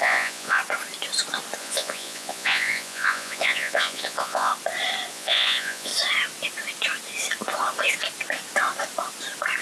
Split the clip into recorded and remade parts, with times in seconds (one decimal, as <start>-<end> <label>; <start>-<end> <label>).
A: 0.0-0.6 remade; 0.6-1.6 recorded; 1.6-4.5 remade; 4.5-5.1 recorded; 5.1-5.9 remade; 5.9-9.6 recorded